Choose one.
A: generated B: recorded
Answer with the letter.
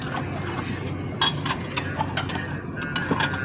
B